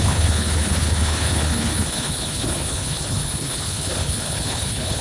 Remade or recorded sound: remade